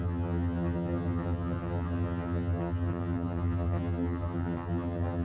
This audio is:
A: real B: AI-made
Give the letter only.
B